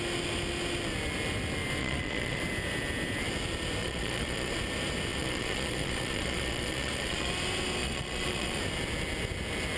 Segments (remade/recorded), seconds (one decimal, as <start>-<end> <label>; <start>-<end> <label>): 0.0-1.8 recorded; 1.8-2.4 remade; 2.4-3.8 recorded; 3.8-4.5 remade; 4.5-5.1 recorded; 5.1-7.3 remade; 7.3-7.8 recorded; 7.8-8.6 remade; 8.6-9.8 recorded